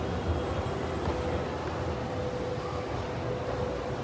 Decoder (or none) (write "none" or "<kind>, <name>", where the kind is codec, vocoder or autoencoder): none